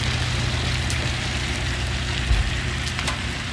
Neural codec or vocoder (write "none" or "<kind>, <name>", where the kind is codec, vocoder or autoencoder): none